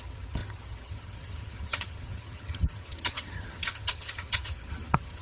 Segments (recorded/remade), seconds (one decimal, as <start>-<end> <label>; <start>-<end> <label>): 0.0-5.2 remade